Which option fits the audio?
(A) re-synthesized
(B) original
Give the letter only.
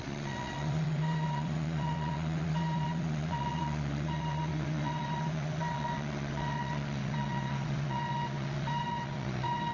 A